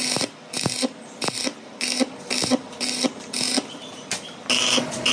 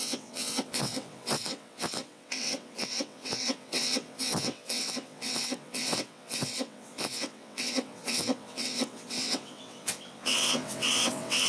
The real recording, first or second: first